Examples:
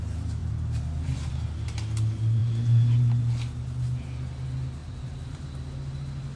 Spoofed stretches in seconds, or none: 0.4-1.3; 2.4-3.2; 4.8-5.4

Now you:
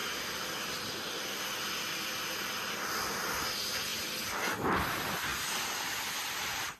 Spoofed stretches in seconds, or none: none

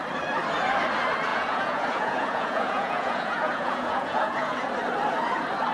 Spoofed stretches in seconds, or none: 1.3-4.7